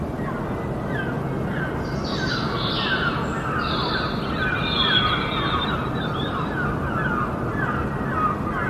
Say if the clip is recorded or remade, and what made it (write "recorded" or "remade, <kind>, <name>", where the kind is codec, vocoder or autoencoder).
recorded